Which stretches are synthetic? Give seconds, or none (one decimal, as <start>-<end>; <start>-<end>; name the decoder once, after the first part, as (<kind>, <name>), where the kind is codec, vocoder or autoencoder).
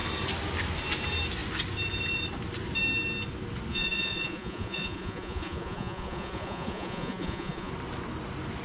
3.7-7.7 (vocoder, Vocos)